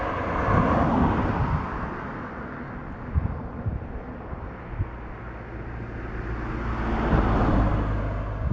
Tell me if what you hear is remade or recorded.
recorded